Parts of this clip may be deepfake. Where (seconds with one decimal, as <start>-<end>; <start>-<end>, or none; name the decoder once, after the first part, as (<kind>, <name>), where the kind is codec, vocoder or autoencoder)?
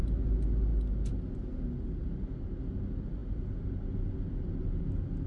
none